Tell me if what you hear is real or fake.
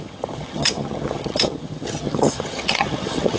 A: fake